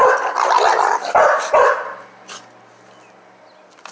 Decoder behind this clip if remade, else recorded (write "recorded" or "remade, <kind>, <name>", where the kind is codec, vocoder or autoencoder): recorded